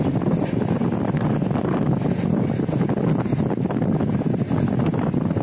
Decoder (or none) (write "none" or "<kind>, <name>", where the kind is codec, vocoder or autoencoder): none